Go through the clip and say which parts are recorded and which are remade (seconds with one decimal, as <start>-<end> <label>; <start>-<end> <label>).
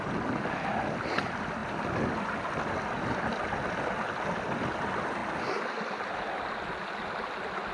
0.0-7.7 recorded